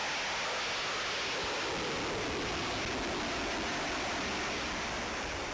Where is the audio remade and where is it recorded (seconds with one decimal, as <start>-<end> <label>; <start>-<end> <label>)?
0.0-5.5 recorded